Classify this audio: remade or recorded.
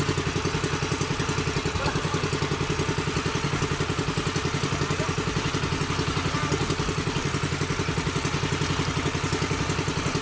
recorded